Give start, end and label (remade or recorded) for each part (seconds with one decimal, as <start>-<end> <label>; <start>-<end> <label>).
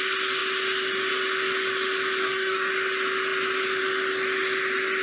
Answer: 0.0-2.2 recorded; 2.2-2.7 remade; 2.7-5.0 recorded